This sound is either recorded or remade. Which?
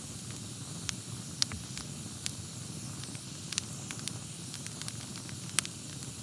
recorded